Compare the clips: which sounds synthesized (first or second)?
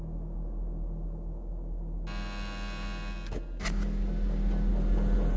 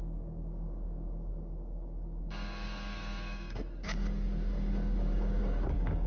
second